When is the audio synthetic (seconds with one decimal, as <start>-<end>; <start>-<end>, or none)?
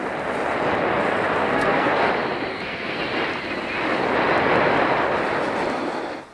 1.4-2.1; 2.5-3.0